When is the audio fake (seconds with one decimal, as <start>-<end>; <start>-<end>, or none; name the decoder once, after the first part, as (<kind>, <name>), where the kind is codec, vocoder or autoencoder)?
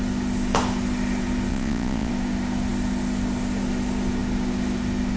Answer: 1.5-2.1 (vocoder, Vocos)